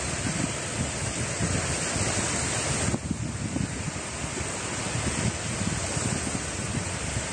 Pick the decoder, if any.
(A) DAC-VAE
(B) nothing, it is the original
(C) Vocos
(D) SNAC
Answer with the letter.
B